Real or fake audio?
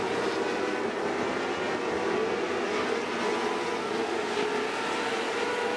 real